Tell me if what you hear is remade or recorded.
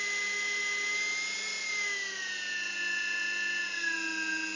recorded